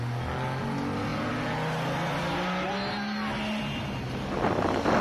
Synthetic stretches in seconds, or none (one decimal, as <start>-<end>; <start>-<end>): none

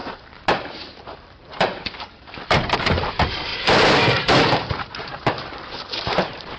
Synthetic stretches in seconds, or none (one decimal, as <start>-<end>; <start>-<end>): 0.0-6.6

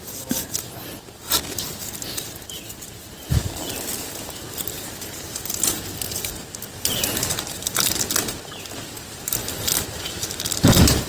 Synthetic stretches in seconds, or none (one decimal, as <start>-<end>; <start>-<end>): none

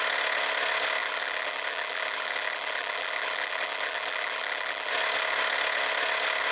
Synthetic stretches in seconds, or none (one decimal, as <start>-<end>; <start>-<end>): 1.0-4.9

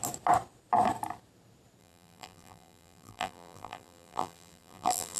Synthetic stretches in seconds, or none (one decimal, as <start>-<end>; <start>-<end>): 1.8-5.2